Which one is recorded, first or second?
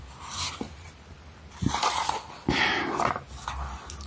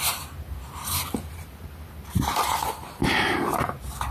first